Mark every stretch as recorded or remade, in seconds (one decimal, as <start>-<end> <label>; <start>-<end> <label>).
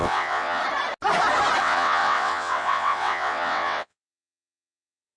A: 0.0-0.6 remade; 0.6-1.6 recorded; 1.6-5.2 remade